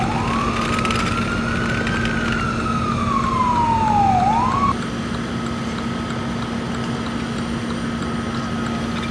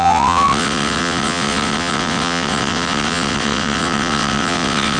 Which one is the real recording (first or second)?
first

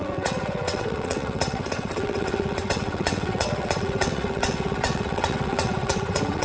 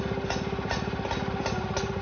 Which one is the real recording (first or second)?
second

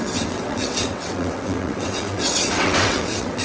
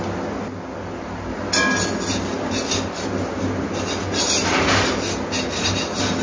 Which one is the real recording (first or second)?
second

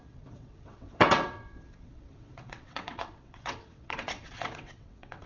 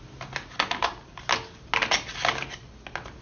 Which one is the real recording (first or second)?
second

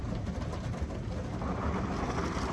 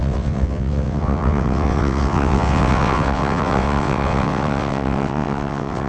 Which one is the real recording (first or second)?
first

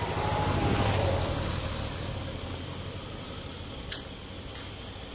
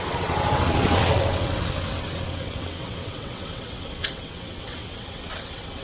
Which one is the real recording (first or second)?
first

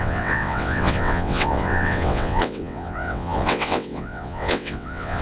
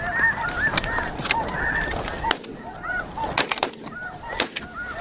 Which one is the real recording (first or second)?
second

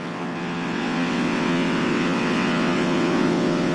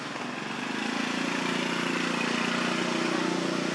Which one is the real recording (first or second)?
second